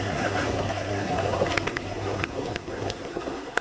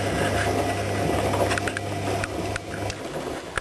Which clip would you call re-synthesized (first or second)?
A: first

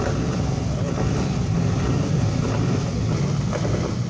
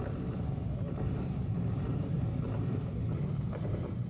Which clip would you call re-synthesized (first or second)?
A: second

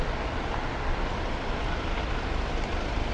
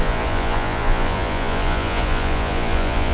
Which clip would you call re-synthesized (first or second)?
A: second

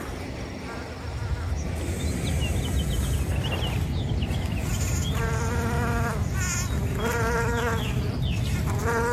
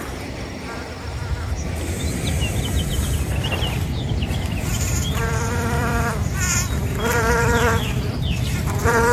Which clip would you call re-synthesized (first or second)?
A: second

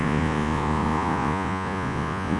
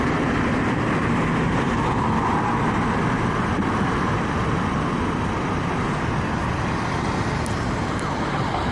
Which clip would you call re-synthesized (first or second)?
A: first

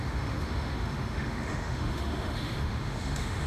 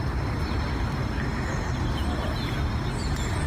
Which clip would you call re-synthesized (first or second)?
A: first